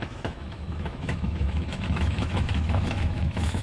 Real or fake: fake